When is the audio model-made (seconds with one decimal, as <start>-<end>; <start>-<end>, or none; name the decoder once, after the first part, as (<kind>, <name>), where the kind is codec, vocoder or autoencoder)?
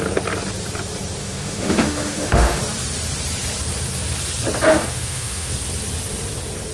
1.2-2.6 (autoencoder, DAC-VAE); 4.7-5.5